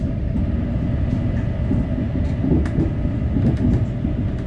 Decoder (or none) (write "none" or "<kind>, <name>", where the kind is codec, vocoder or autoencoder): none